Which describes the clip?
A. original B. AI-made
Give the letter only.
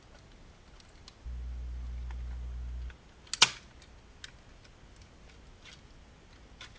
A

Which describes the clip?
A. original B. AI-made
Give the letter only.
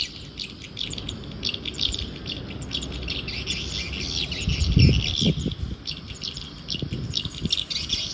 A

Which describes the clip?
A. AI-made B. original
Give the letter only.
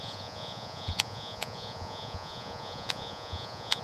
A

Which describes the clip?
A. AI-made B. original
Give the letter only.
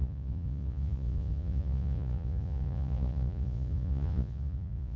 A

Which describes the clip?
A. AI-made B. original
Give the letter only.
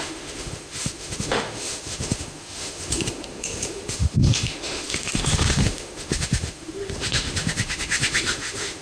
A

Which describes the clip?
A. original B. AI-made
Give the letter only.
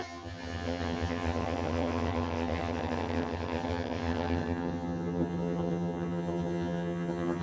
B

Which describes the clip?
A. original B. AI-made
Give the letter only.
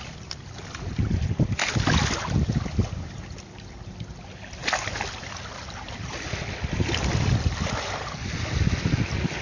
A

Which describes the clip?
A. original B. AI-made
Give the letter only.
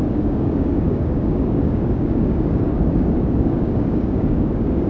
B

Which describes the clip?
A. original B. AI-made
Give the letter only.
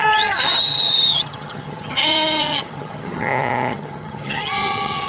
B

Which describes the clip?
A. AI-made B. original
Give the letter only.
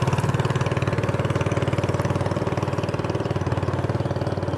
B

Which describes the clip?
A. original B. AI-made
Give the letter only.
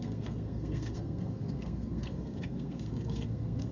B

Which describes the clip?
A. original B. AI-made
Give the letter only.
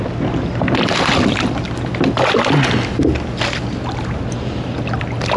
A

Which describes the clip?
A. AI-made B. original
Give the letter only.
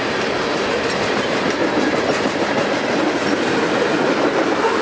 B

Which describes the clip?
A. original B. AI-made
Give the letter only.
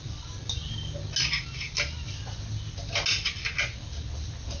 A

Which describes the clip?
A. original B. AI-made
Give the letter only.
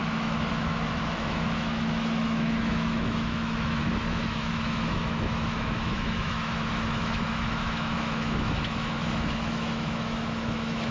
B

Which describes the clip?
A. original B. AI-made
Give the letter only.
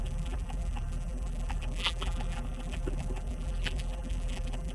B